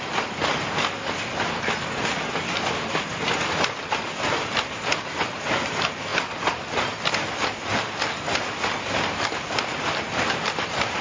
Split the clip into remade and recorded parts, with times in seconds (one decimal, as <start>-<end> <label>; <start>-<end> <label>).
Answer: 0.0-11.0 recorded